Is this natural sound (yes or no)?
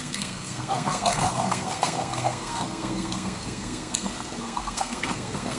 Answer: no